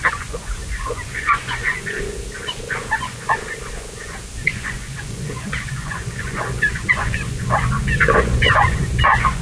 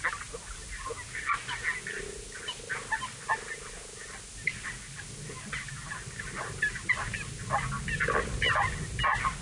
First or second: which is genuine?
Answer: second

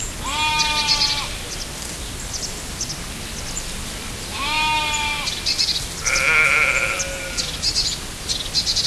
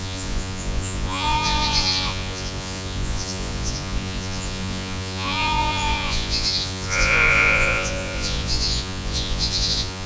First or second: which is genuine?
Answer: first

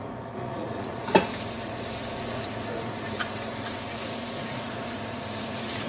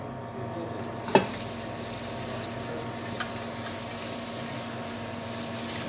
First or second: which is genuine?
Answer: second